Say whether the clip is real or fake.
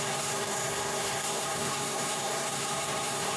fake